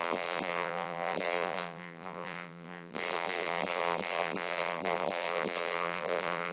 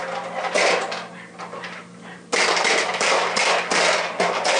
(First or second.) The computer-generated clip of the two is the first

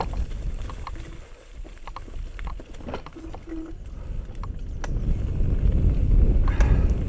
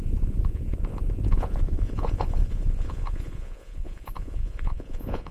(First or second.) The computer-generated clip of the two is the second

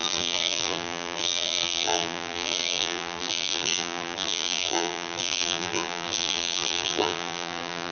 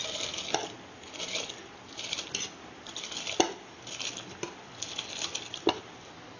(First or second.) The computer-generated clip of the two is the first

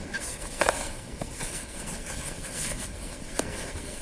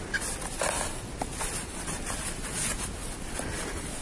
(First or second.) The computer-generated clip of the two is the first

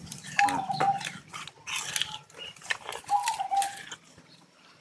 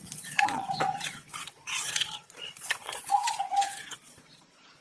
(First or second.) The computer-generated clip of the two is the second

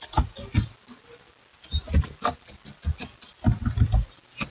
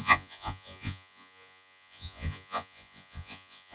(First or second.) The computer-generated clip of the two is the second